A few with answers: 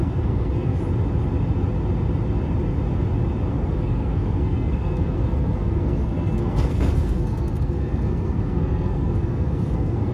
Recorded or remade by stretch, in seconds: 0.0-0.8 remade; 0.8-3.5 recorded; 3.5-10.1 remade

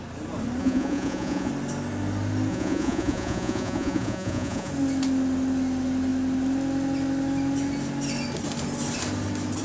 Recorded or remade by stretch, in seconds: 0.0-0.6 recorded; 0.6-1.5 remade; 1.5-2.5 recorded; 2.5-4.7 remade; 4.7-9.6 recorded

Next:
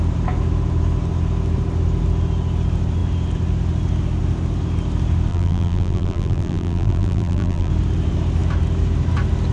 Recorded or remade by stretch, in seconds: 0.0-5.3 recorded; 5.3-7.7 remade; 7.7-9.5 recorded